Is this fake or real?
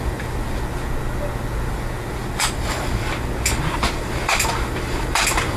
real